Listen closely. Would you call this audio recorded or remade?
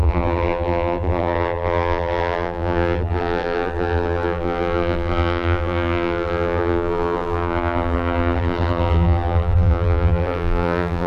remade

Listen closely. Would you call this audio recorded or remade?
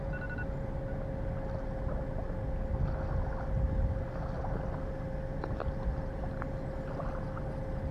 recorded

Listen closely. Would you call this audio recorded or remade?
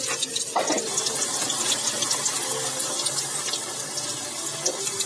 recorded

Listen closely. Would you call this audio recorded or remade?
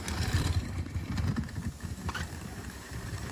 remade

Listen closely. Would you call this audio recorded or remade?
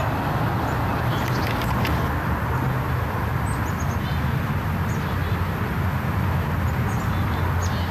recorded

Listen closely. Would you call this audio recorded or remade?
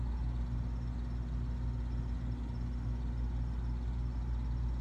recorded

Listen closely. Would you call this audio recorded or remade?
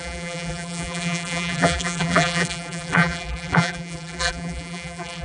remade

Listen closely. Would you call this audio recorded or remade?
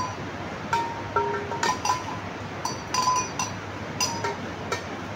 recorded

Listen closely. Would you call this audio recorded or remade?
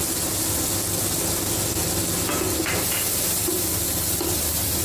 recorded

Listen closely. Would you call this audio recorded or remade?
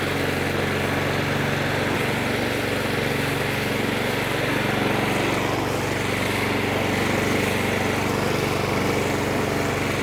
recorded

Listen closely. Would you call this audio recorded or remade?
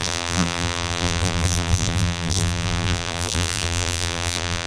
remade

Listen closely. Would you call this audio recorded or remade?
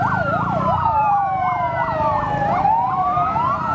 remade